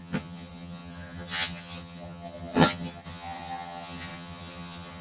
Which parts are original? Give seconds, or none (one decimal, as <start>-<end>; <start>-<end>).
none